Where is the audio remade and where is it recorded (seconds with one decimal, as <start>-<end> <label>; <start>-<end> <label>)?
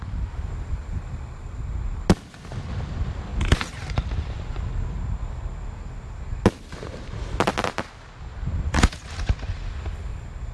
0.0-10.5 recorded